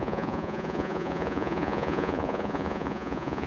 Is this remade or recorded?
remade